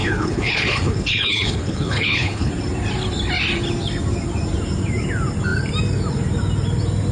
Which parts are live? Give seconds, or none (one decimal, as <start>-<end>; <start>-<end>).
2.5-7.1

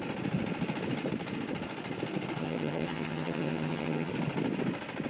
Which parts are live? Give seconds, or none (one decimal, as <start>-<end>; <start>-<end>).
0.0-2.4; 4.1-5.1